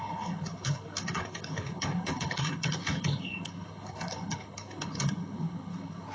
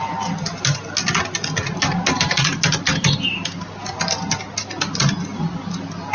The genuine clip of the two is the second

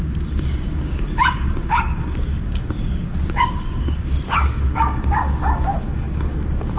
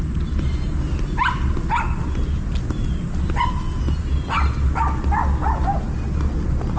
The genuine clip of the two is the second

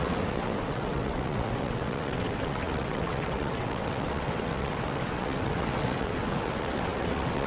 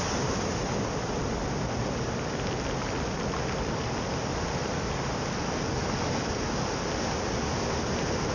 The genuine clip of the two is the second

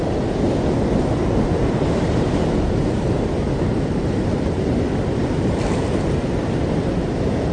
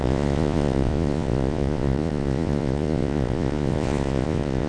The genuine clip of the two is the first